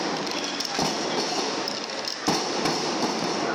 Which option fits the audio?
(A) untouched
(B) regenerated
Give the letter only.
A